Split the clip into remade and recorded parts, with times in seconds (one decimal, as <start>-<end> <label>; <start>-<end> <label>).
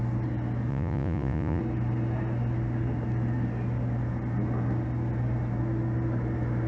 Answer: 0.0-0.7 recorded; 0.7-1.6 remade; 1.6-6.7 recorded